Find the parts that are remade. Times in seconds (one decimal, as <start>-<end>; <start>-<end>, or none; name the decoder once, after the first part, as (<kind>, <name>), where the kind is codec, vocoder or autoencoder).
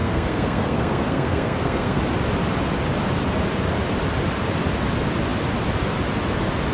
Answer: 0.0-2.0 (codec, SNAC)